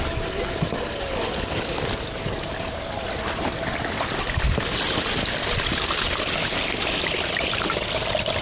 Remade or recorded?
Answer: recorded